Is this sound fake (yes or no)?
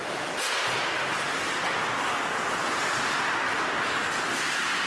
no